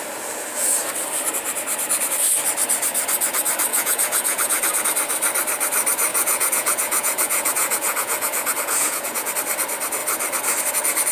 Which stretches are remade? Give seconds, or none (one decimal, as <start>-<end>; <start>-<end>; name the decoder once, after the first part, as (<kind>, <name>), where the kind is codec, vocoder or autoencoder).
3.7-4.8 (vocoder, Vocos); 6.1-9.3